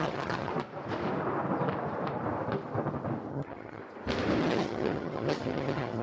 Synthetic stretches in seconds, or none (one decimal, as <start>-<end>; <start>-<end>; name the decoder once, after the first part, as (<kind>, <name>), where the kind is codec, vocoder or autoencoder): 0.0-0.5 (vocoder, HiFi-GAN); 3.3-3.8; 4.4-6.0

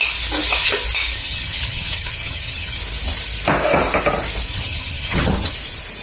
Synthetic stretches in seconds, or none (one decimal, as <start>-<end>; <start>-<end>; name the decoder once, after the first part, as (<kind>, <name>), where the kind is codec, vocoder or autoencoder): 1.2-2.8 (vocoder, HiFi-GAN); 4.5-5.3

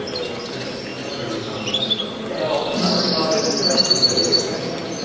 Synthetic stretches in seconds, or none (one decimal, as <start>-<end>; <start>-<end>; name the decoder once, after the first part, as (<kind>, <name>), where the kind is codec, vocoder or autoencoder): none

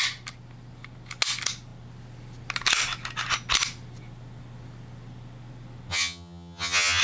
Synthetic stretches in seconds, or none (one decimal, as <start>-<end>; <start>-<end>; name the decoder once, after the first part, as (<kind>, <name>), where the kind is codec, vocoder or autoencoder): 5.9-7.0 (vocoder, HiFi-GAN)

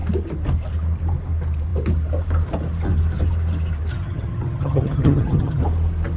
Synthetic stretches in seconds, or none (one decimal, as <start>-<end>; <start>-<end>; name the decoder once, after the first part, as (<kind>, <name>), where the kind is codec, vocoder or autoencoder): 3.9-5.6 (vocoder, HiFi-GAN)

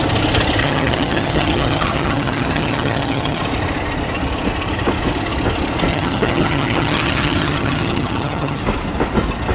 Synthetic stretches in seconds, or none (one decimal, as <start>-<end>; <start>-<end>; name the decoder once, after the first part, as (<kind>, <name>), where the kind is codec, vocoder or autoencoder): 0.6-3.4 (vocoder, HiFi-GAN); 5.9-8.6